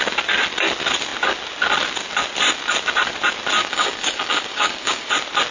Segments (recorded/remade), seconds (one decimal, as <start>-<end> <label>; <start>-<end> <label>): 0.0-3.6 recorded; 3.6-5.1 remade; 5.1-5.5 recorded